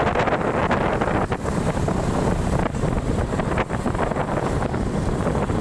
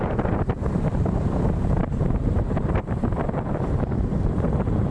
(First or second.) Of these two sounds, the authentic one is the first